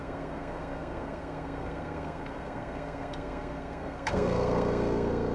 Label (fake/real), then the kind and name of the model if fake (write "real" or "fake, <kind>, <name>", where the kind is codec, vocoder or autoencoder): fake, codec, SNAC